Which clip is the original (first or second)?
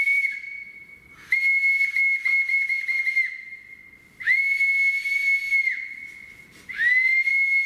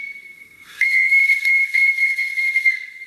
first